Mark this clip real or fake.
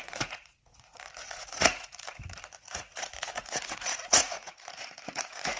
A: fake